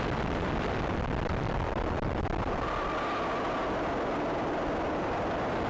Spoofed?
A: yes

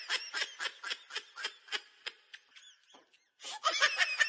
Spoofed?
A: no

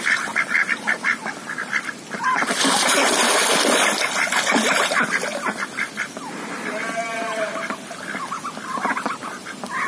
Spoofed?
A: yes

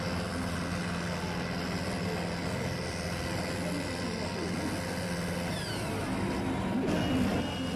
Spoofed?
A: no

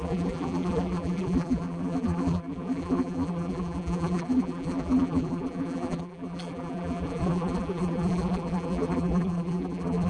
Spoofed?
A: yes